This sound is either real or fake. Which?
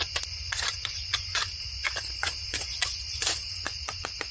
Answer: fake